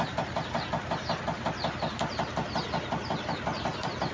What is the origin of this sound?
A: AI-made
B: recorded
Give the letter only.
B